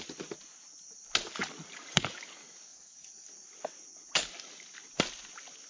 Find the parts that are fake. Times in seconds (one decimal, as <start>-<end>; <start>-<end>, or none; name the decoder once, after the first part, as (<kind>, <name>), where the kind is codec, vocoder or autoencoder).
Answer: 2.7-3.3 (codec, DAC)